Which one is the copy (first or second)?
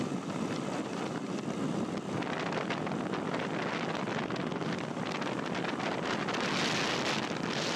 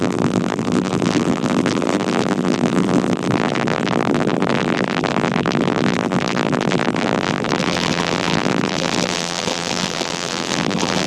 second